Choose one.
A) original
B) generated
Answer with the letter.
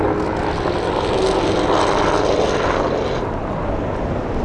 A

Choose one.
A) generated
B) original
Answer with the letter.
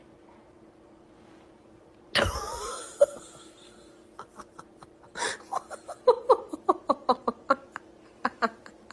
B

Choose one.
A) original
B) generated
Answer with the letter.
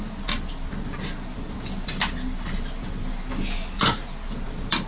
A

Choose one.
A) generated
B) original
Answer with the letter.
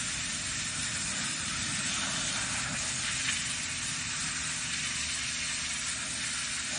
B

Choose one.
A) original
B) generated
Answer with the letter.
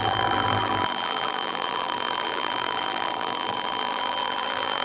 B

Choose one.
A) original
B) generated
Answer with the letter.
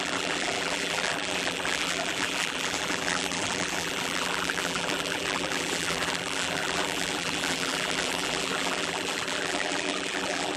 B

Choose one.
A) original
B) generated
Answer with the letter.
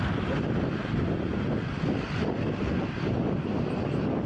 A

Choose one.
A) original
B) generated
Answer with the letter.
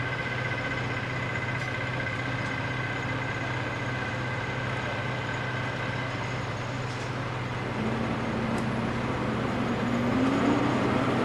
A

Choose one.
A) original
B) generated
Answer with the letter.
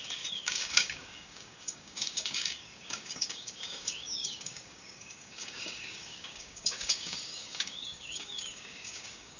B